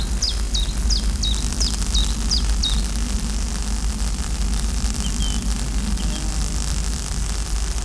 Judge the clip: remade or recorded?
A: recorded